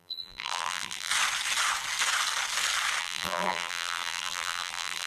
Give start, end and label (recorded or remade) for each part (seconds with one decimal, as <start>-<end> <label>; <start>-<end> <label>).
0.0-1.1 remade; 1.1-3.0 recorded; 3.0-5.1 remade